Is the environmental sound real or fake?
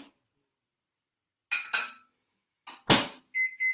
real